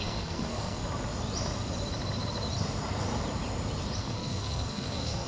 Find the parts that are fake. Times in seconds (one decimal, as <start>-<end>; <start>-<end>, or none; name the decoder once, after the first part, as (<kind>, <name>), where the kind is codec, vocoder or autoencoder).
0.0-0.8 (codec, SNAC); 4.0-5.3